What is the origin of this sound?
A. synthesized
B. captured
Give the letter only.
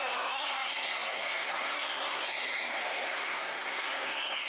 A